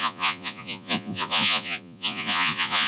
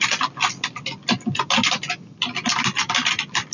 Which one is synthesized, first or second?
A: first